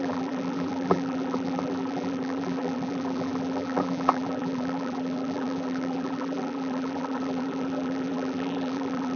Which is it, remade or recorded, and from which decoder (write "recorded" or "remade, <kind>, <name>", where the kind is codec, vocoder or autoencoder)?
remade, vocoder, BigVGAN v2